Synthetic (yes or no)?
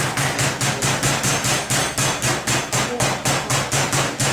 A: no